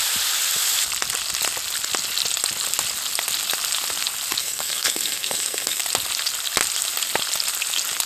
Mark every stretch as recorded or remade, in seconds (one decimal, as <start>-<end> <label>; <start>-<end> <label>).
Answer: 0.0-4.4 recorded; 4.4-5.8 remade; 5.8-8.1 recorded